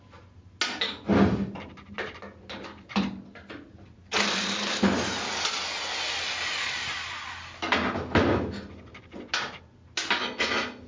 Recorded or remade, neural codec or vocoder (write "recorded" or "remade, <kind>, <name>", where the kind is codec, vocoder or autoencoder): recorded